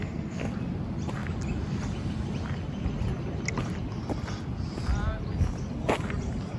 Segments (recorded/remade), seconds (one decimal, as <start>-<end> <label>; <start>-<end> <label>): 0.0-0.5 remade; 0.5-6.6 recorded